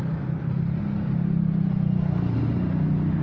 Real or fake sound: real